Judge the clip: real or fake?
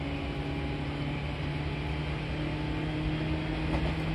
real